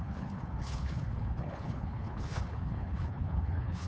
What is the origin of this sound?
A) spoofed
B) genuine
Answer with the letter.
A